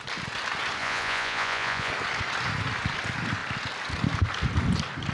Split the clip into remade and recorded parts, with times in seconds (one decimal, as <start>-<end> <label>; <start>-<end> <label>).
0.0-0.8 recorded; 0.8-1.9 remade; 1.9-5.1 recorded